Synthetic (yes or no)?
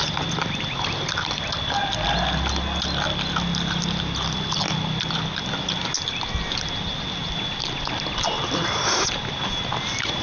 no